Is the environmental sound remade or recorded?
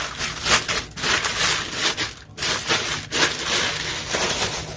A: recorded